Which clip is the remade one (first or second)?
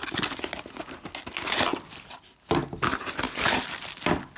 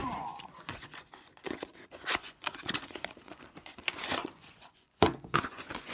second